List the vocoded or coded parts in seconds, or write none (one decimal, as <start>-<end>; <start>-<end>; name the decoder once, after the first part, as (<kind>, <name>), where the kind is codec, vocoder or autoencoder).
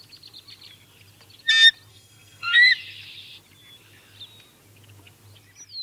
1.9-2.7 (codec, SNAC)